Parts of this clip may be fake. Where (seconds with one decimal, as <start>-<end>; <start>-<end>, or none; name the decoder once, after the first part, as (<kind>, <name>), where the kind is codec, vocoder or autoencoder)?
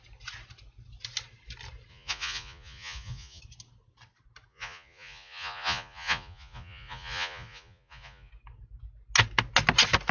1.9-3.4 (vocoder, Vocos); 4.5-8.3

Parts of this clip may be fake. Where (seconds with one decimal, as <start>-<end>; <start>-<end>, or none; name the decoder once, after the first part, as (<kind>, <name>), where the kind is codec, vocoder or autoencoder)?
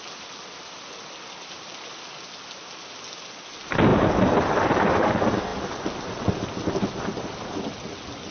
none